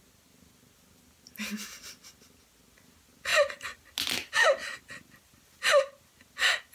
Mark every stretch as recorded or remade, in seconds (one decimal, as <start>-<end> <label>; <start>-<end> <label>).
0.0-6.7 recorded